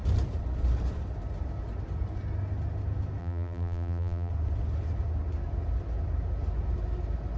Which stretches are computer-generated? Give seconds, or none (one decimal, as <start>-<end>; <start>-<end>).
3.2-4.3